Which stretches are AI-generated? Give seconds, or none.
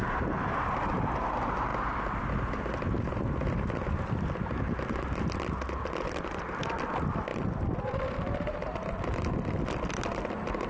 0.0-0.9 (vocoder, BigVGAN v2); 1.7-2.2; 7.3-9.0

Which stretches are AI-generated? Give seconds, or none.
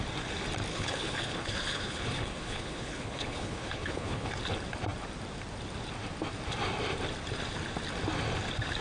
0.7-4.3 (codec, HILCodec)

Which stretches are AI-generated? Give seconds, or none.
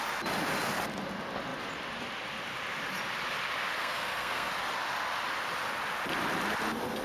3.8-4.5 (codec, SNAC)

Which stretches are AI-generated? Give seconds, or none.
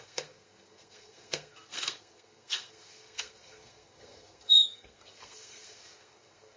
0.0-6.6 (codec, SNAC)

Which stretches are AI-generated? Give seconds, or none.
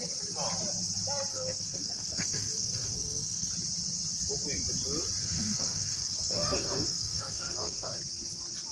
1.3-3.5 (codec, SNAC); 5.2-7.9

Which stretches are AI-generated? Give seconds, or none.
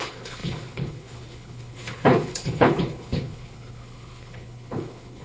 0.0-5.2 (codec, HILCodec)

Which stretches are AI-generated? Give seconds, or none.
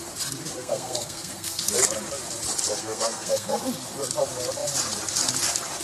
0.6-1.6 (codec, SNAC); 2.8-3.6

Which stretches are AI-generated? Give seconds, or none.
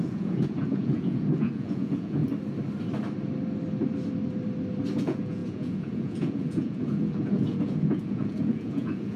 0.0-2.2 (vocoder, Vocos); 5.0-9.2